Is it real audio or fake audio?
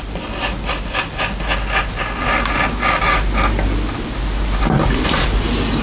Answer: real